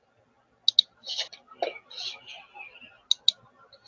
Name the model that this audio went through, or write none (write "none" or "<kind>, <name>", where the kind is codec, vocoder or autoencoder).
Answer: none